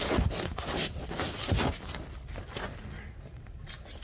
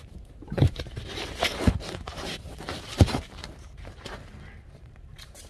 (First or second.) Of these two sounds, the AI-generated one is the second